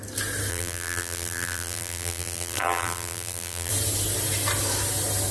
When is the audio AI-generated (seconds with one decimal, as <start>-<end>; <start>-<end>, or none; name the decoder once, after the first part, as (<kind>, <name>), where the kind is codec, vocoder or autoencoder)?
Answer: 0.5-3.7 (vocoder, BigVGAN v2)

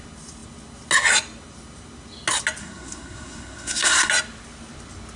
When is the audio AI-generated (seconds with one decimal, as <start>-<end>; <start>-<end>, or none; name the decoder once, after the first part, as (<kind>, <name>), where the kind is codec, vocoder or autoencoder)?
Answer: 2.6-4.1 (codec, SNAC)

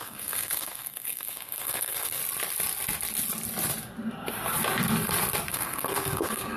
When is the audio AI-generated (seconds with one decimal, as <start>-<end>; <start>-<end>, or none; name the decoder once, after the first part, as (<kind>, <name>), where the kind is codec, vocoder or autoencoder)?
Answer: 0.0-2.2 (codec, SNAC); 5.5-6.6